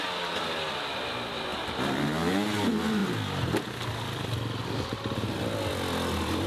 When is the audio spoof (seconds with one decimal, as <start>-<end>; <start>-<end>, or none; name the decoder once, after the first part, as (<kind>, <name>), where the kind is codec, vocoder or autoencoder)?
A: none